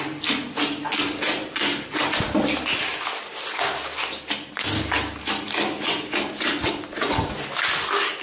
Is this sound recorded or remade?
recorded